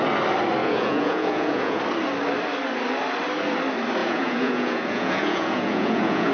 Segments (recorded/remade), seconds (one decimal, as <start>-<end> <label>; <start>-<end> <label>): 0.0-0.6 recorded; 0.6-1.8 remade; 1.8-4.0 recorded; 4.0-6.3 remade

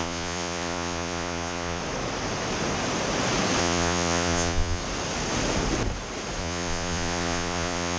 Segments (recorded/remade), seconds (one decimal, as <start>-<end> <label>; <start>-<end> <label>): 0.0-1.8 remade; 1.8-3.6 recorded; 3.6-4.8 remade; 4.8-6.4 recorded; 6.4-8.0 remade

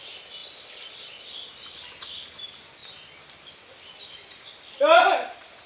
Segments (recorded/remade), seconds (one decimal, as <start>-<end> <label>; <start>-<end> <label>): 0.0-5.7 recorded

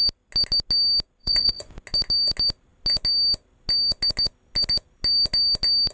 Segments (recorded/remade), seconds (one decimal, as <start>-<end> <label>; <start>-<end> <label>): 0.0-1.2 recorded; 1.2-1.7 remade; 1.7-5.9 recorded

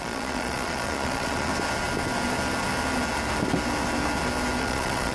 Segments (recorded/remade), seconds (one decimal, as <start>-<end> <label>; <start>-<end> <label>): 0.0-1.5 remade; 1.5-4.6 recorded; 4.6-5.1 remade

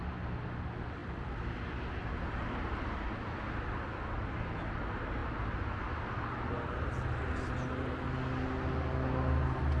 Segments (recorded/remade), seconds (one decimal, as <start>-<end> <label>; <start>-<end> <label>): 0.0-9.8 recorded

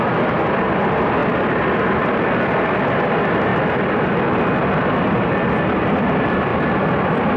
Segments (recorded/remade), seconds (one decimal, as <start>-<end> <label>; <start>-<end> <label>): 0.0-7.4 recorded

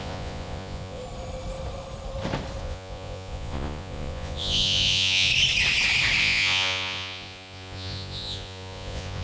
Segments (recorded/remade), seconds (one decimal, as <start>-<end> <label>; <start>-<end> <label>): 0.0-1.0 remade; 1.0-2.6 recorded; 2.6-5.3 remade; 5.3-6.2 recorded; 6.2-9.2 remade